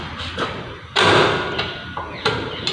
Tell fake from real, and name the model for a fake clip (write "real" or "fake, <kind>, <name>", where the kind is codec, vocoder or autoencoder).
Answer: real